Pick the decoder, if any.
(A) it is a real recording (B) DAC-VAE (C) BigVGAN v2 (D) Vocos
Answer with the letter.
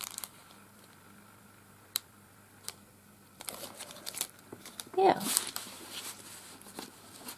C